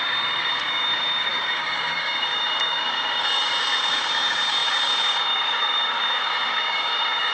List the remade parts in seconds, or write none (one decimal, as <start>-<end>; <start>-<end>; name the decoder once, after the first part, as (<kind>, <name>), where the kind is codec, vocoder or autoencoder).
0.0-7.3 (codec, DAC)